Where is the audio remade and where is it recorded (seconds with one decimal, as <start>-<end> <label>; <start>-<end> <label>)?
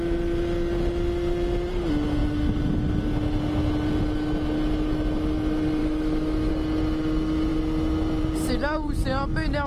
0.0-5.8 recorded; 5.8-6.5 remade; 6.5-9.7 recorded